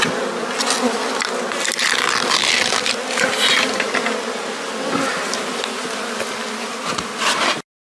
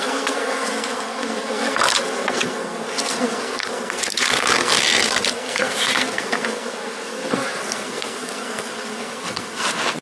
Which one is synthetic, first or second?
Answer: second